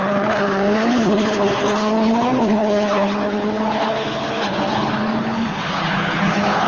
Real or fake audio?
fake